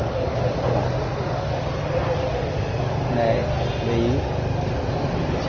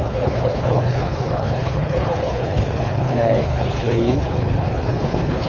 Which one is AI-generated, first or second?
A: second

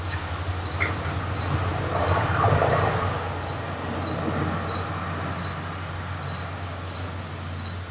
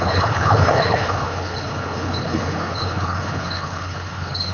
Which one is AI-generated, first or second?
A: second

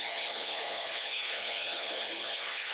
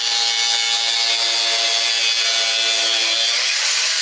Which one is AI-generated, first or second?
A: first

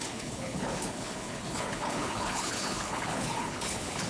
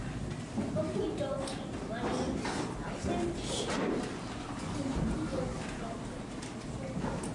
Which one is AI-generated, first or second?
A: first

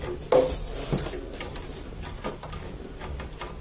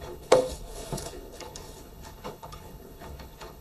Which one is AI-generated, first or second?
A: second